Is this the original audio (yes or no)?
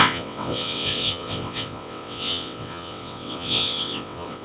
no